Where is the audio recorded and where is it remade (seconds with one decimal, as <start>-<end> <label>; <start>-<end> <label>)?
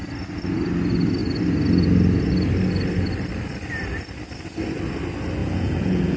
0.0-5.4 recorded; 5.4-6.2 remade